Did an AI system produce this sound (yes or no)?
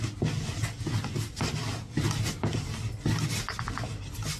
no